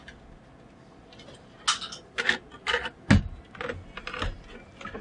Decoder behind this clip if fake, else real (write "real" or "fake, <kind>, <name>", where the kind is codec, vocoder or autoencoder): real